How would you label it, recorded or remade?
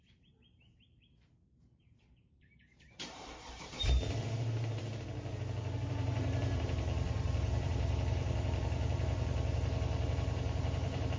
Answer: remade